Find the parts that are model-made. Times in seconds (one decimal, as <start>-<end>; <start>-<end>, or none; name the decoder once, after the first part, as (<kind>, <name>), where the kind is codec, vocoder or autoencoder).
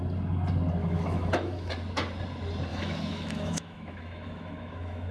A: 0.8-1.7 (autoencoder, DAC-VAE); 2.7-5.1